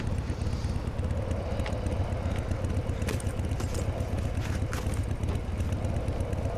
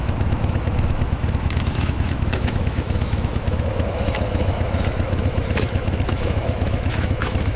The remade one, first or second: second